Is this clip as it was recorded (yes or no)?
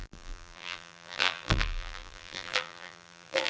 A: no